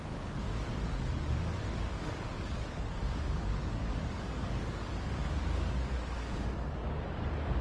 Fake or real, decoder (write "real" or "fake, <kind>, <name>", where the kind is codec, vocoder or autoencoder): fake, codec, DAC